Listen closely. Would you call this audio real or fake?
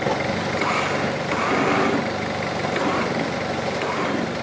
fake